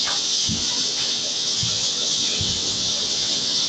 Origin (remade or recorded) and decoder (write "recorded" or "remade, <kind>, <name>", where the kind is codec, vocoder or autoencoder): remade, vocoder, WaveNeXt